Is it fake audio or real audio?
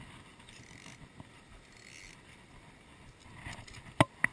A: real